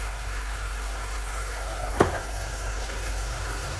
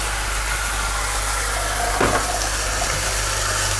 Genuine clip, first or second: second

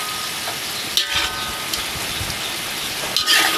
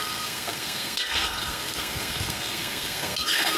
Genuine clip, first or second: first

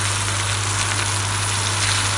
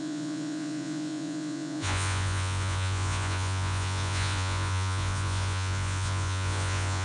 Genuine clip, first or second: first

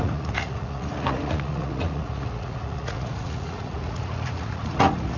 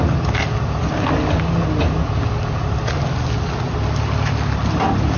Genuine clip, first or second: second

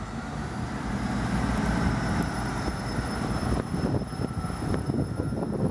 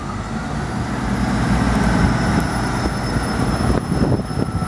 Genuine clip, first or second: second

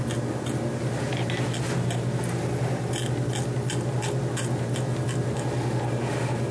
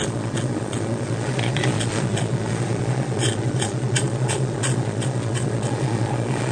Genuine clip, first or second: first